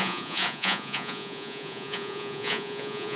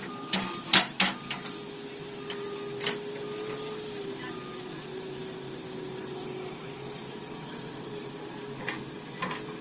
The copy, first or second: first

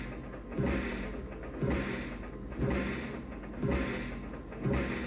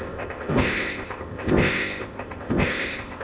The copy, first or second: second